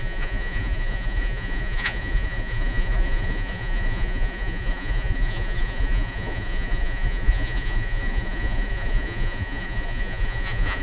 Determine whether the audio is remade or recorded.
remade